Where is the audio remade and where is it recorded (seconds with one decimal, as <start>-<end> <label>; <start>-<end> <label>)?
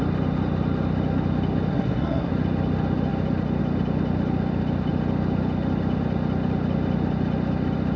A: 0.0-1.7 recorded; 1.7-2.3 remade; 2.3-8.0 recorded